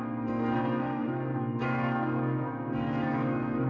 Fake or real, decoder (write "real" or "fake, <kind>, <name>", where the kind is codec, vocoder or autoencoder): fake, codec, SNAC